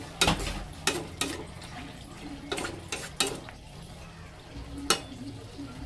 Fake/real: real